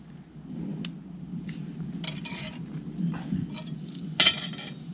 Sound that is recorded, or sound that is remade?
recorded